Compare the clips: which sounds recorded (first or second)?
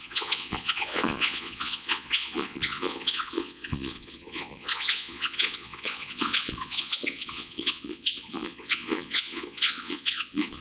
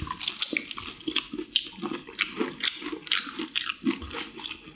second